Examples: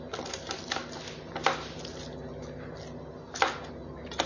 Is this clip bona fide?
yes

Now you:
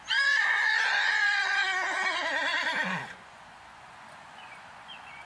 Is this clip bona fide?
no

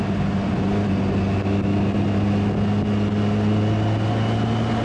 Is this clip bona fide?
yes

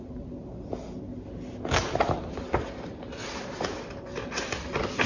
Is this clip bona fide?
yes